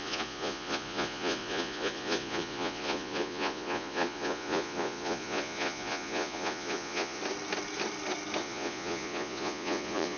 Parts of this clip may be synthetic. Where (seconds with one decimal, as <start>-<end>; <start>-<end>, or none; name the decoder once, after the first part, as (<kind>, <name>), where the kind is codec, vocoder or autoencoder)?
0.0-7.2 (vocoder, Vocos); 8.4-10.2